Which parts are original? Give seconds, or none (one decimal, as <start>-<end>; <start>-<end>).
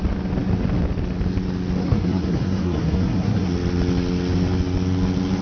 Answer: 0.0-1.8; 3.5-5.4